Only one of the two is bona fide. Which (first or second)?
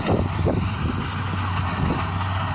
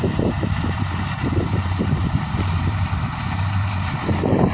first